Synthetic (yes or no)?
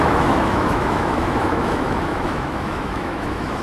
yes